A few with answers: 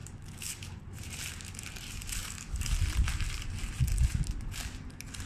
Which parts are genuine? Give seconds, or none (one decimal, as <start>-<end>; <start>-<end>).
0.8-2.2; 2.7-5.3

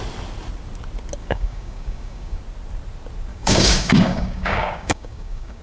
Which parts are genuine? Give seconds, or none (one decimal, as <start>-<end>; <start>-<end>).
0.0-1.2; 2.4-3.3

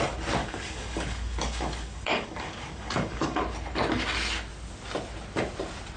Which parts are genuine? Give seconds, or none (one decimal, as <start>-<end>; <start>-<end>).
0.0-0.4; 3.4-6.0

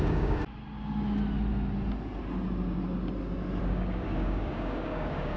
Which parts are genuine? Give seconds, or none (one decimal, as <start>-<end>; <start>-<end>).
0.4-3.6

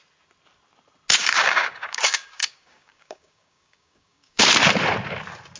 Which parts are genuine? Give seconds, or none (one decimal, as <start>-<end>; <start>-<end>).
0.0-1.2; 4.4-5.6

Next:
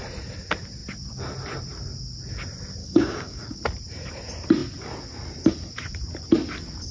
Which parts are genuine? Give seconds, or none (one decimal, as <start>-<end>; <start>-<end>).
0.0-2.8; 3.6-6.9

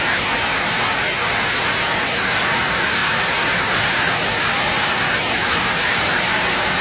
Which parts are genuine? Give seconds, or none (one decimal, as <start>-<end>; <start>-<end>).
0.0-6.8